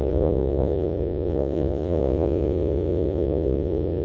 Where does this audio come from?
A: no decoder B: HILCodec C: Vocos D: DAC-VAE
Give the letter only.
C